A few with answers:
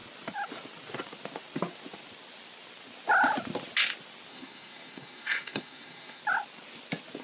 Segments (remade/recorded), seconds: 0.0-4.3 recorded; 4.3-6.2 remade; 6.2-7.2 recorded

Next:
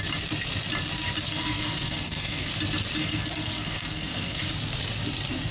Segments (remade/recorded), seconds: 0.0-1.3 recorded; 1.3-2.5 remade; 2.5-3.0 recorded; 3.0-4.4 remade; 4.4-5.5 recorded